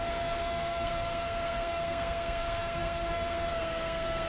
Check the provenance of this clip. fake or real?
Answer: fake